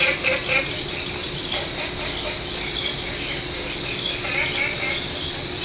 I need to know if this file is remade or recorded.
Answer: recorded